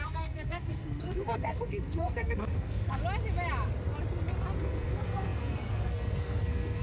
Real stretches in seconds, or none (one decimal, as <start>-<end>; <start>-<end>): 3.0-4.6